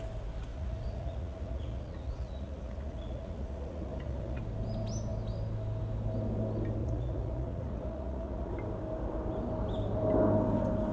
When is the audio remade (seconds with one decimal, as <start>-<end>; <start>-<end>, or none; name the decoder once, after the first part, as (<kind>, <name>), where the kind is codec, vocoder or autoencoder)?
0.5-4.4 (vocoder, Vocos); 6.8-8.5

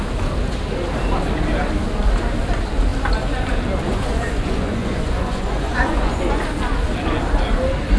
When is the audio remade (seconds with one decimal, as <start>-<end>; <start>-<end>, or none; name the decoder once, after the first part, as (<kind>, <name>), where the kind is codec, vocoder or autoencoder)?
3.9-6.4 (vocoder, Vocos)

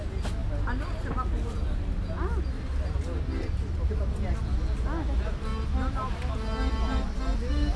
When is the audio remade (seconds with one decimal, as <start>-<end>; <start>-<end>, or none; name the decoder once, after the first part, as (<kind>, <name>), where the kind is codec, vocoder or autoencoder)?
none